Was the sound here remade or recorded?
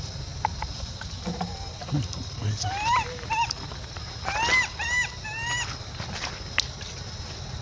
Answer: recorded